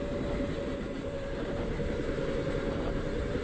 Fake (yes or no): no